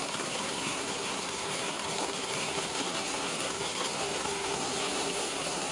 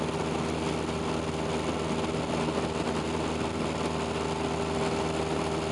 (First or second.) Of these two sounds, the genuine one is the second